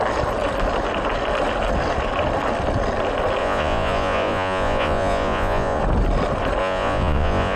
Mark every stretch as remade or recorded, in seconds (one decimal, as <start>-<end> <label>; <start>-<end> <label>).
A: 0.0-3.4 recorded; 3.4-5.8 remade; 5.8-6.6 recorded; 6.6-7.6 remade